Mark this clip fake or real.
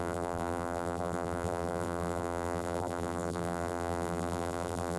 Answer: fake